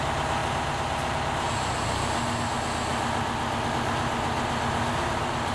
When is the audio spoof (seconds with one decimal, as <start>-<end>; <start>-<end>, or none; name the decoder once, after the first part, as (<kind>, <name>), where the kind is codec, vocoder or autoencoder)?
none